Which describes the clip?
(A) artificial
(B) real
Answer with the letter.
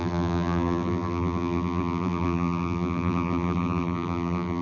A